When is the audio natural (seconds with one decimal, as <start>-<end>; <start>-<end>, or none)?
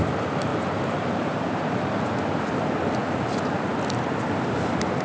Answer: 0.0-0.5; 2.1-5.0